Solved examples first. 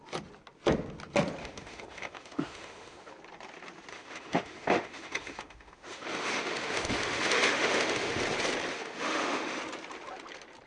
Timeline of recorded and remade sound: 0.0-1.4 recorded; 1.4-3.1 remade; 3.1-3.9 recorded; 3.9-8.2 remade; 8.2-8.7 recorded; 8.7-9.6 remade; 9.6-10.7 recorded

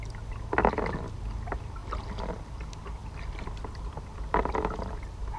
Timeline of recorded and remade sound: 0.0-5.4 recorded

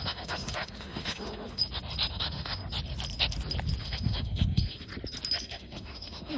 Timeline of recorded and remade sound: 0.0-1.6 remade; 1.6-2.1 recorded; 2.1-2.6 remade; 2.6-3.8 recorded; 3.8-4.9 remade; 4.9-5.4 recorded; 5.4-6.4 remade

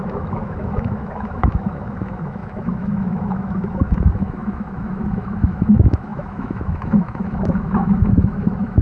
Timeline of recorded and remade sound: 0.0-8.8 remade